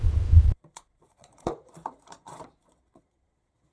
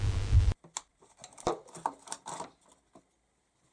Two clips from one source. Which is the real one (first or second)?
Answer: second